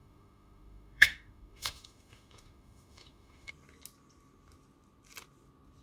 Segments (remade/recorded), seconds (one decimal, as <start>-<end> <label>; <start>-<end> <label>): 0.0-3.5 remade; 3.5-5.8 recorded